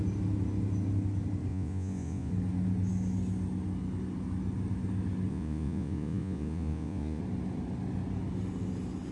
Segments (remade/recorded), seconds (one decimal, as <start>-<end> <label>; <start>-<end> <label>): 0.0-1.5 recorded; 1.5-2.3 remade; 2.3-5.3 recorded; 5.3-7.2 remade; 7.2-9.1 recorded